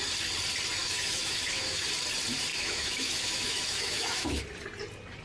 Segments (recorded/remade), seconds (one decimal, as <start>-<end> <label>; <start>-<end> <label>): 0.0-0.8 recorded; 0.8-1.9 remade; 1.9-2.5 recorded; 2.5-4.4 remade; 4.4-5.2 recorded

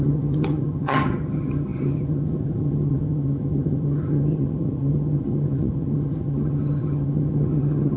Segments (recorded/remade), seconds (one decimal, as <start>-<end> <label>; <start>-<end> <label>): 0.0-8.0 remade

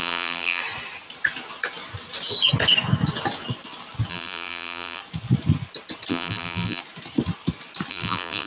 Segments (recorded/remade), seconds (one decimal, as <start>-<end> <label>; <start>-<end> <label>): 0.0-0.6 remade; 0.6-4.1 recorded; 4.1-5.0 remade; 5.0-6.1 recorded; 6.1-6.8 remade; 6.8-7.9 recorded; 7.9-8.5 remade

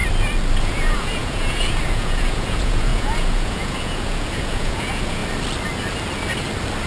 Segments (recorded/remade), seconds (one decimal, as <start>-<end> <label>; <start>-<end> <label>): 0.0-0.6 recorded; 0.6-5.2 remade; 5.2-6.9 recorded

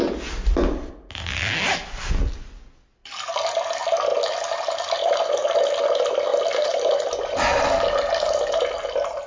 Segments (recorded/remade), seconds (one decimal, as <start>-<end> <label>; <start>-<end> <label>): 0.0-3.0 recorded; 3.0-3.5 remade; 3.5-4.1 recorded; 4.1-5.8 remade; 5.8-6.3 recorded; 6.3-7.0 remade; 7.0-9.3 recorded

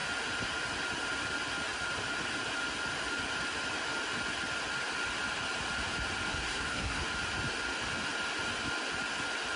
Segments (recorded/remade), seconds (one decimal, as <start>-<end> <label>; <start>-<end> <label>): 0.0-6.3 recorded; 6.3-7.0 remade; 7.0-9.6 recorded

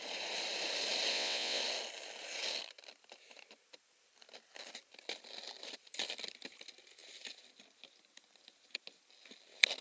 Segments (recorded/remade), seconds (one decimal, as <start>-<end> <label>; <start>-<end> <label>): 0.0-1.1 recorded; 1.1-1.6 remade; 1.6-9.8 recorded